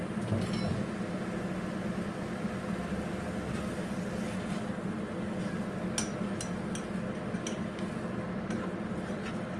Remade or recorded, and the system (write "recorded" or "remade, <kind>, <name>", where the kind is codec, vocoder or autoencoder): recorded